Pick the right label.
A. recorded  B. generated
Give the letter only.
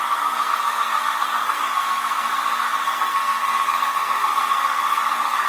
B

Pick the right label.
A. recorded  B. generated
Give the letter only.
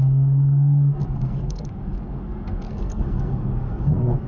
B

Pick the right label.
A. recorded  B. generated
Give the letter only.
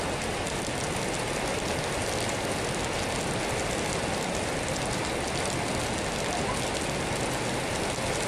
A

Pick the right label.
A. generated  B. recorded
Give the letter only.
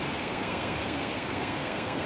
A